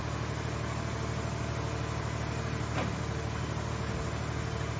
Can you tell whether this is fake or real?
real